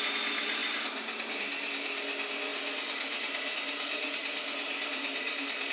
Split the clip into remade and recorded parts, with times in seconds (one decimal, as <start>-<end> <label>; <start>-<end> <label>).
0.0-5.7 recorded